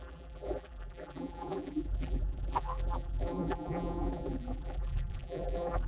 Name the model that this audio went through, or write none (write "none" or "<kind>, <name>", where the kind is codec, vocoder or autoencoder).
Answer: vocoder, BigVGAN v2